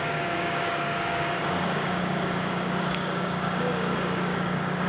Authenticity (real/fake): fake